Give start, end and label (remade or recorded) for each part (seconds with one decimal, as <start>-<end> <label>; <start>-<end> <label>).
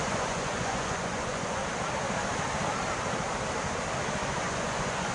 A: 0.0-1.6 remade; 1.6-4.4 recorded; 4.4-5.1 remade